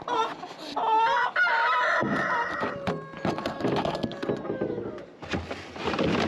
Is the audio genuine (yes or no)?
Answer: yes